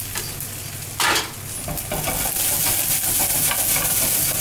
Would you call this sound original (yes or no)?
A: yes